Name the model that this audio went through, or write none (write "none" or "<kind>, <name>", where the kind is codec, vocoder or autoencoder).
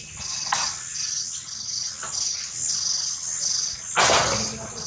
none